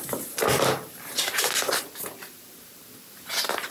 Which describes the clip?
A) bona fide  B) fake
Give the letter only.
A